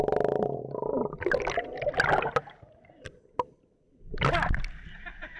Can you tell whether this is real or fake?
real